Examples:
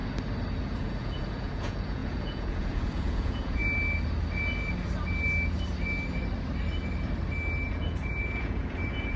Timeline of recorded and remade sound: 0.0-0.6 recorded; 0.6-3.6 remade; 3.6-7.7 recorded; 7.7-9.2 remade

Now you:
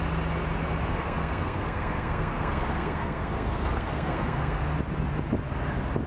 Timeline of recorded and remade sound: 0.0-0.9 recorded; 0.9-4.6 remade; 4.6-6.1 recorded

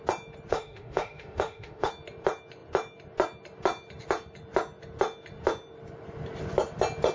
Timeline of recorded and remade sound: 0.0-0.5 recorded; 0.5-1.9 remade; 1.9-7.1 recorded

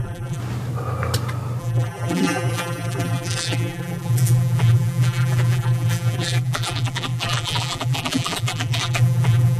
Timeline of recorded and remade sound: 0.0-0.4 remade; 0.4-1.6 recorded; 1.6-9.6 remade